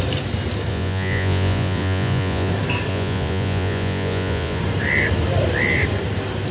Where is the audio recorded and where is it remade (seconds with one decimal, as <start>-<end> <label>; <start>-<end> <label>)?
0.0-0.7 recorded; 0.7-2.5 remade; 2.5-2.9 recorded; 2.9-4.6 remade; 4.6-6.5 recorded